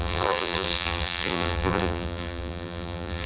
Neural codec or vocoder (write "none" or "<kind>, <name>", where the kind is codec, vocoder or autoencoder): vocoder, BigVGAN v2